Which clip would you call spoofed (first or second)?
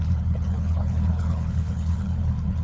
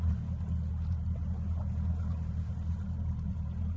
first